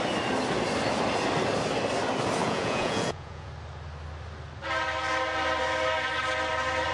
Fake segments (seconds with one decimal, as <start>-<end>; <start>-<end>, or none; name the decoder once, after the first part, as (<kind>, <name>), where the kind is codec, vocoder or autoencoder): 2.4-3.5 (vocoder, Vocos)